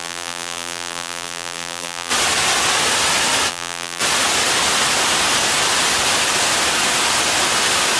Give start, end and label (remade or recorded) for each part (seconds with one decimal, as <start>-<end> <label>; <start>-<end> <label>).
0.0-2.1 remade; 2.1-3.5 recorded; 3.5-4.0 remade; 4.0-8.0 recorded